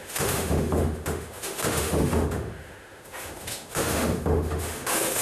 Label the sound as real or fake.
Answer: fake